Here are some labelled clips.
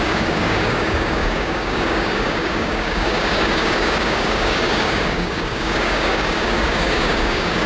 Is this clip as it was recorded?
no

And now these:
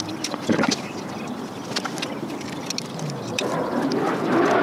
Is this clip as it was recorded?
yes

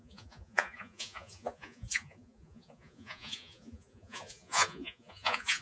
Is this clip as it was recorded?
no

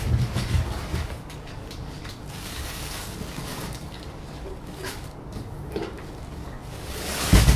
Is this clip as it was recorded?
no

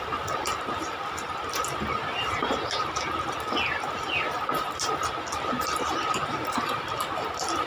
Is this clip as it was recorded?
yes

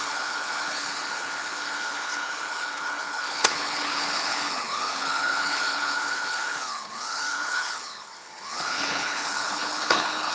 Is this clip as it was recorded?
no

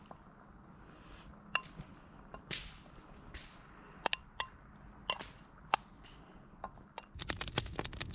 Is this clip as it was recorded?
yes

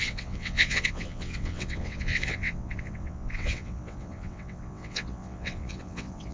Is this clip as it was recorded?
no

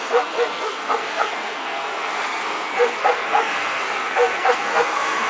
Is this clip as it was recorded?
no